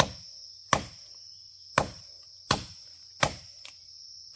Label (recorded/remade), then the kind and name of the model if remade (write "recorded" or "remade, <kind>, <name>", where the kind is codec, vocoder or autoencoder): recorded